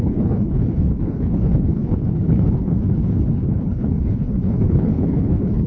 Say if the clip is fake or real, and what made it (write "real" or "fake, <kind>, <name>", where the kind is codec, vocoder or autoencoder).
fake, codec, HILCodec